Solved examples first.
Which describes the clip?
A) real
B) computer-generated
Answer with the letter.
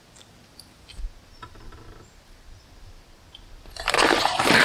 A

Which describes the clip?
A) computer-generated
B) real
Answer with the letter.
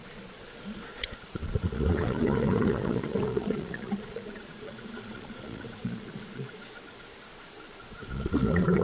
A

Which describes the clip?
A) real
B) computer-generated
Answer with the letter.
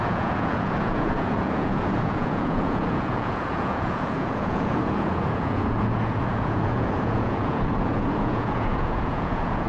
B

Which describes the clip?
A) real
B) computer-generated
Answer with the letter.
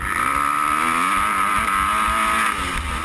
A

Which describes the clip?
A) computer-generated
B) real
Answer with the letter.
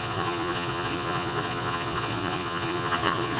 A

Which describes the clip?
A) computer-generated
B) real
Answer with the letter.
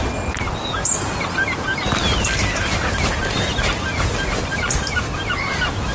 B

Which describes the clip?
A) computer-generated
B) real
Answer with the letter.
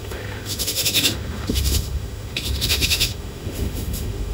A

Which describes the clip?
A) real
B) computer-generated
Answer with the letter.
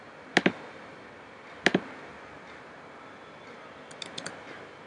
A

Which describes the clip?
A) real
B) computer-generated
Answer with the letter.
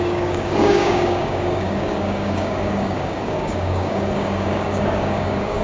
B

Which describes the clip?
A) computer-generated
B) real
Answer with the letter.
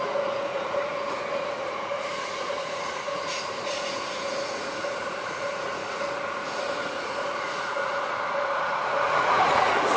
A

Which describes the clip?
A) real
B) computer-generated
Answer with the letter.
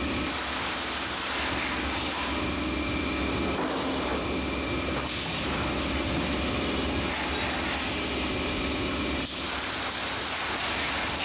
A